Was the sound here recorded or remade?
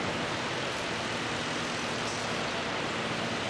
recorded